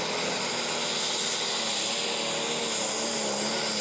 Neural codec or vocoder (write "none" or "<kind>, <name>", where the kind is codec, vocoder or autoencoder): none